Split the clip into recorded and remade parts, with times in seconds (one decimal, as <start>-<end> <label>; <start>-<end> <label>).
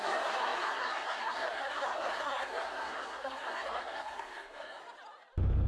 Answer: 0.0-4.8 remade; 4.8-5.7 recorded